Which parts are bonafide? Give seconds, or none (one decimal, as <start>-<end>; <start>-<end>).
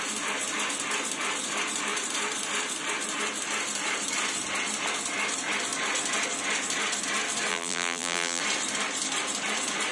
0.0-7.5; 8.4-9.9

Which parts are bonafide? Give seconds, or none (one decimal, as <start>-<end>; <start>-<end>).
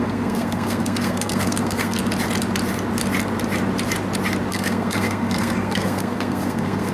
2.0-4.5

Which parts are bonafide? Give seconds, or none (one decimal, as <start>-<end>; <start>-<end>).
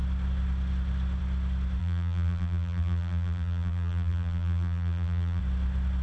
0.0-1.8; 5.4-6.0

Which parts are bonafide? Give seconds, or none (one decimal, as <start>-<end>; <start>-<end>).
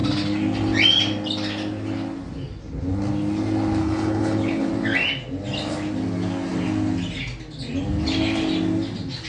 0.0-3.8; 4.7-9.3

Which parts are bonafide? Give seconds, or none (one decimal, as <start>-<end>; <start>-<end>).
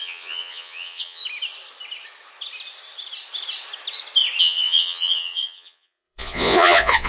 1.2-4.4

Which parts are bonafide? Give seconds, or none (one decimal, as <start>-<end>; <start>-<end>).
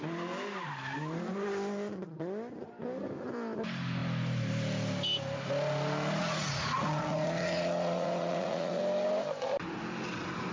0.0-6.2; 8.8-10.5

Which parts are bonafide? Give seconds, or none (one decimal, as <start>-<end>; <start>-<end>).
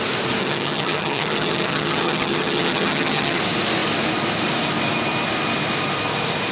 0.0-0.4; 3.4-6.5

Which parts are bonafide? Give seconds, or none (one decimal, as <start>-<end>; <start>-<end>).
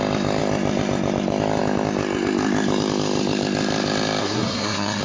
0.0-4.2